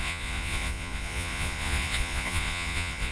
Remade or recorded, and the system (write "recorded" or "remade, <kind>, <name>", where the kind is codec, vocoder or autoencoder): remade, vocoder, Vocos